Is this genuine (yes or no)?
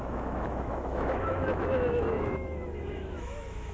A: no